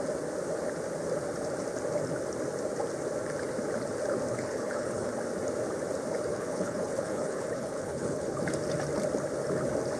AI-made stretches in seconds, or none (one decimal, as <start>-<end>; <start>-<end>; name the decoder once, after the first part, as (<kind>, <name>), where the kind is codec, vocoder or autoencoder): 4.3-5.1 (codec, HILCodec); 6.3-8.4